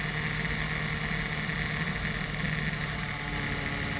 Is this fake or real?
real